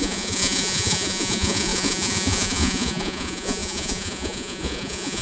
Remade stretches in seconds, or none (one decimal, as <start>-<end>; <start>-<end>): 0.0-5.2